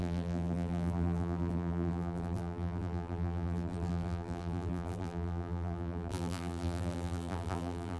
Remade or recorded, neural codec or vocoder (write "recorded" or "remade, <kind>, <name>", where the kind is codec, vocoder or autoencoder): remade, vocoder, BigVGAN v2